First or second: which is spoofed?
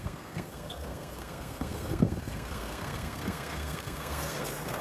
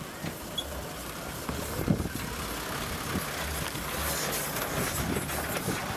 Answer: first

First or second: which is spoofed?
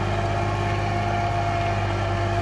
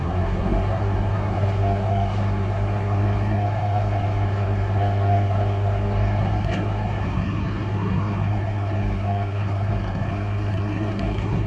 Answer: second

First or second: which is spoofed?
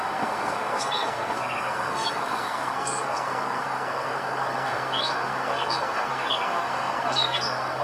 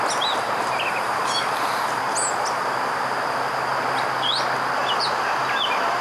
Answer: first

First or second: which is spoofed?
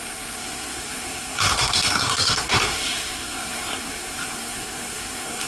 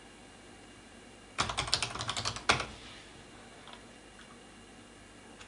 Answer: first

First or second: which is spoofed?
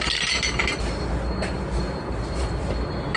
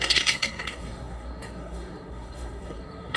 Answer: second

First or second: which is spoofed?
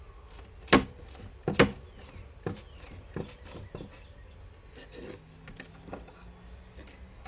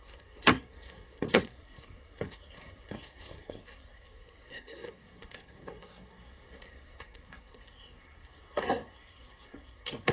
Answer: second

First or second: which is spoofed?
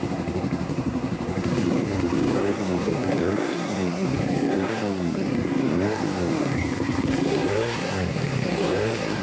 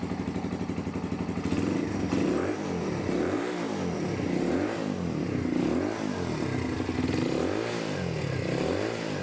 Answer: first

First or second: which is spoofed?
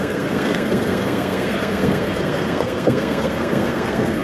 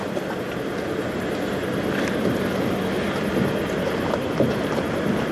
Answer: first